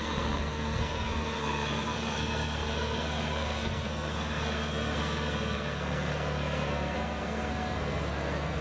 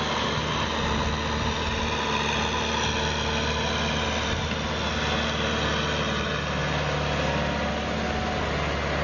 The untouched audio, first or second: second